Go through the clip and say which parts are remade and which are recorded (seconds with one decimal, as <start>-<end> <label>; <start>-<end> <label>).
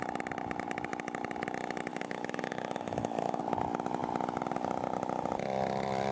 0.0-1.9 recorded; 1.9-3.4 remade; 3.4-6.1 recorded